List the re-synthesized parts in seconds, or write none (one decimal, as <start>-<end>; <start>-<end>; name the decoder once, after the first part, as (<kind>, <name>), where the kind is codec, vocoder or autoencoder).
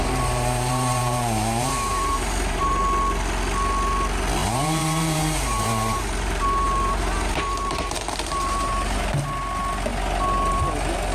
0.0-2.8 (vocoder, BigVGAN v2); 4.4-9.2